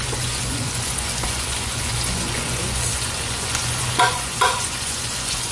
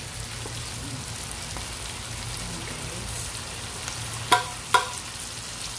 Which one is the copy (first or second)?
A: first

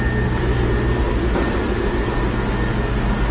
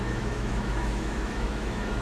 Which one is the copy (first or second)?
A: second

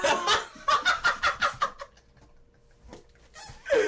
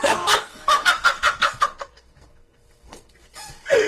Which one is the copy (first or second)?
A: second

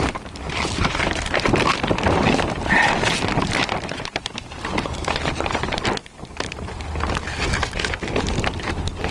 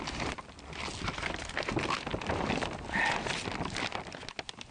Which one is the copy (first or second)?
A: first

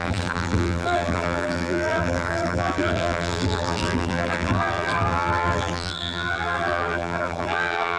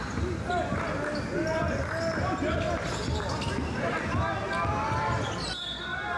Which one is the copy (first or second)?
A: first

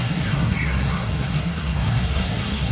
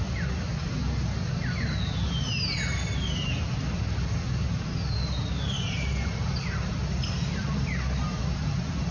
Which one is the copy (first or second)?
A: first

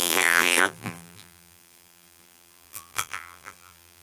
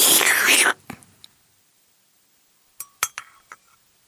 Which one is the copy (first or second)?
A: first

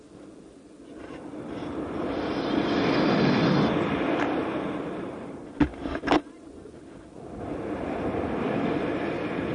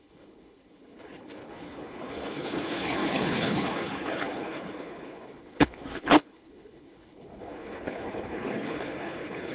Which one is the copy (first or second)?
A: second